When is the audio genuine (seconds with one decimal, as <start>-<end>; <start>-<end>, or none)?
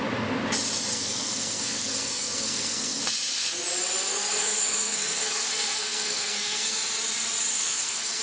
0.0-0.9; 3.0-4.1; 6.8-7.5